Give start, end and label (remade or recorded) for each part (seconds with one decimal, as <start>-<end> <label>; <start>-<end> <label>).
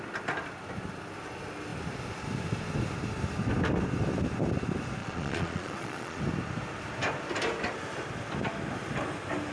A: 0.0-5.0 recorded; 5.0-6.2 remade; 6.2-9.5 recorded